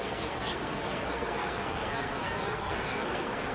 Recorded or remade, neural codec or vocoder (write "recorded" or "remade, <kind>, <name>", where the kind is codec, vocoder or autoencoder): remade, codec, SNAC